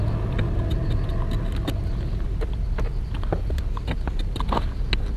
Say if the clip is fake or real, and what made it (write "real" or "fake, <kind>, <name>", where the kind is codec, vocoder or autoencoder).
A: real